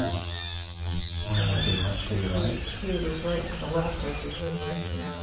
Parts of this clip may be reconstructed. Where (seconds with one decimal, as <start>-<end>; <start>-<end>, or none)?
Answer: 0.0-1.3; 4.4-5.2